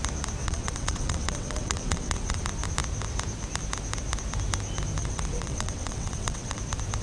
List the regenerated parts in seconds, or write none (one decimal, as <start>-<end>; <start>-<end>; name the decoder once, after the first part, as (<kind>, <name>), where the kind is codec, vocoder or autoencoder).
0.4-2.4 (vocoder, WaveNeXt); 5.0-6.6